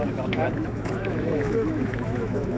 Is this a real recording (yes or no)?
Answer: no